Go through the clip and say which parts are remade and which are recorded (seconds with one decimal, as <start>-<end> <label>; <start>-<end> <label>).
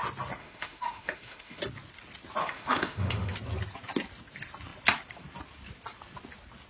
0.0-0.4 recorded; 0.4-1.6 remade; 1.6-2.4 recorded; 2.4-3.3 remade; 3.3-6.7 recorded